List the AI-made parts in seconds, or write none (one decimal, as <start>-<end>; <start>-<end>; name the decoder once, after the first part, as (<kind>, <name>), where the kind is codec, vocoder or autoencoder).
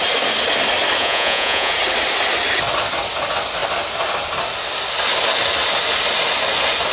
1.0-1.7 (vocoder, Vocos)